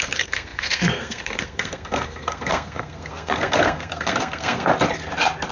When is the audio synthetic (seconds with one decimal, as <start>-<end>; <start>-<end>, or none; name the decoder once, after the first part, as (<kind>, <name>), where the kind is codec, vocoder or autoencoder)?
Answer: 0.0-4.7 (codec, SNAC)